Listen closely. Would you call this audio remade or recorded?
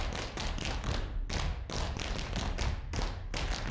recorded